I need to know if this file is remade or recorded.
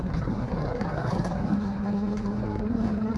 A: remade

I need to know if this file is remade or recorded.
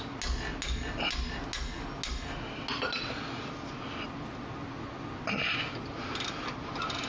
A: recorded